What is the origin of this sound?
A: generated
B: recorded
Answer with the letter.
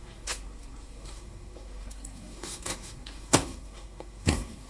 A